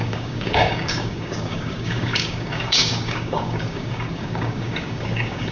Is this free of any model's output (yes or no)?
no